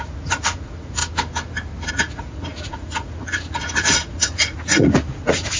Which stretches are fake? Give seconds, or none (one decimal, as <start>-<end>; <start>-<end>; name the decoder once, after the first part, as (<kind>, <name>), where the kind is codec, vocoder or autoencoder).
0.0-1.0 (vocoder, Vocos); 1.9-5.6